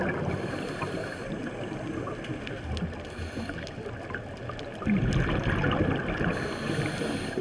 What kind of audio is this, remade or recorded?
recorded